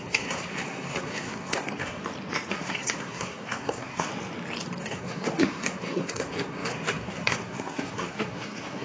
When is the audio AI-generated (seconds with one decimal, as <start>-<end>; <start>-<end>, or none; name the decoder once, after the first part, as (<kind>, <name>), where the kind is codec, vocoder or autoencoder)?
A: 0.0-2.0 (codec, SNAC); 2.5-4.1; 4.8-8.8